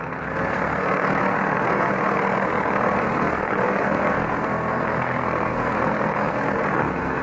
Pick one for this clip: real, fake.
fake